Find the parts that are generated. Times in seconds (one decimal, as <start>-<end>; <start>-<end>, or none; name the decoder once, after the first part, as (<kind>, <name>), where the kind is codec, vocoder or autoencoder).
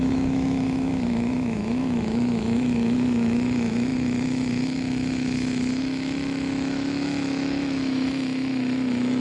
0.0-9.2 (autoencoder, DAC-VAE)